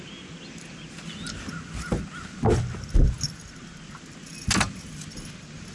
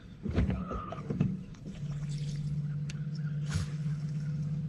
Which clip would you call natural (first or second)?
first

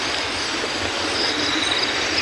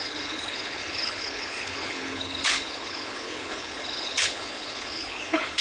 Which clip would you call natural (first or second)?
first